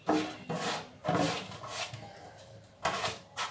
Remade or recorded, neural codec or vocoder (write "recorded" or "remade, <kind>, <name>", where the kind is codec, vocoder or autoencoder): recorded